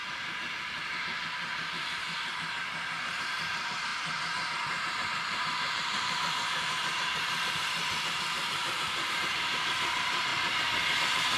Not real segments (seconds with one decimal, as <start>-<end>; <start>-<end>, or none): 0.0-10.3; 10.9-11.4